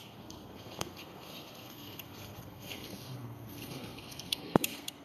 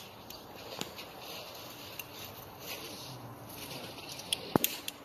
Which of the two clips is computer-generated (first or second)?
first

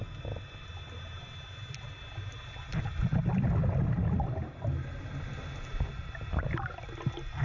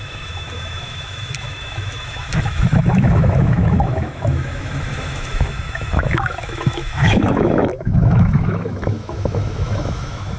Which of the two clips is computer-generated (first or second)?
second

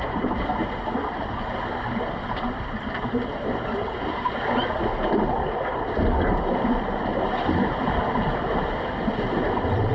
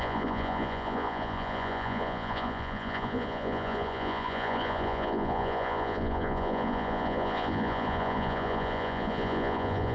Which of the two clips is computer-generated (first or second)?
second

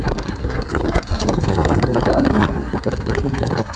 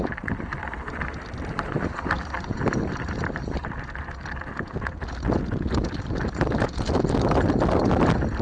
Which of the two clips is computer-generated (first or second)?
first